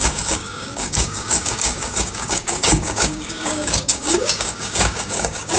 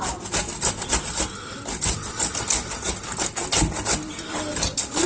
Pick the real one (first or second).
second